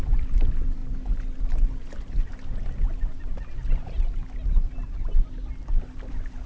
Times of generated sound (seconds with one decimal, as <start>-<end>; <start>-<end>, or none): none